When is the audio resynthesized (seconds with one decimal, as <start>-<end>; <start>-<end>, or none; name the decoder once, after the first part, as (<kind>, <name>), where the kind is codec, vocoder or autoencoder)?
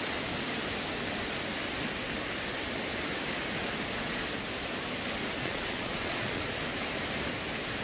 5.4-6.4 (vocoder, Vocos)